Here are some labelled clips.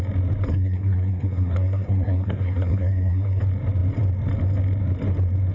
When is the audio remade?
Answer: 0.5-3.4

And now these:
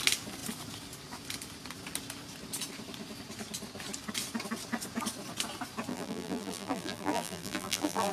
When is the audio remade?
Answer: 5.9-8.1

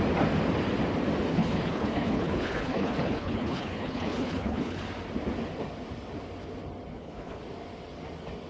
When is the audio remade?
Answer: 1.3-4.8; 6.9-7.4

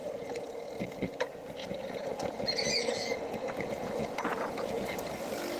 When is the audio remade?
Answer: 0.0-0.7; 1.6-5.0